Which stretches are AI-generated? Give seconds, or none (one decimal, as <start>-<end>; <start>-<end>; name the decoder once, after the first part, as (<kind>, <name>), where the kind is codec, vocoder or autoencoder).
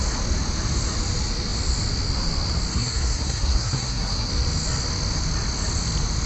2.7-4.3 (codec, SNAC)